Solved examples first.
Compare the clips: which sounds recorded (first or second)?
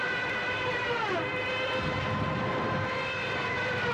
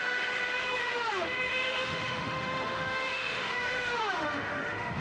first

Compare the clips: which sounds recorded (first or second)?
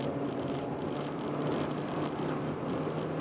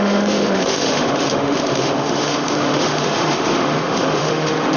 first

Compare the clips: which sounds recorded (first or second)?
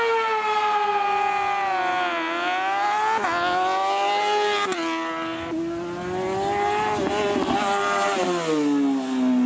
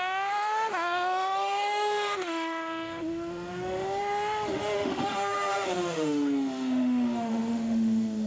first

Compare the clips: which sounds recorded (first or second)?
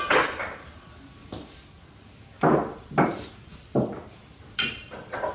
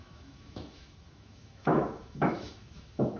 first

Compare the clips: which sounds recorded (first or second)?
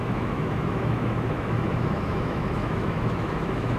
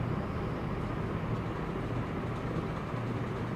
second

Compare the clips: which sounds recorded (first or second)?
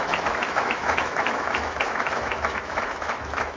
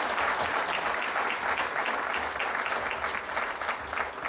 second